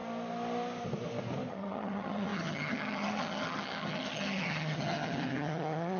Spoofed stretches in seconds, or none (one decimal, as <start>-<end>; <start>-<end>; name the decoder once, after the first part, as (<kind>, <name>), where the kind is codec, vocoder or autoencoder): 1.5-6.0 (vocoder, HiFi-GAN)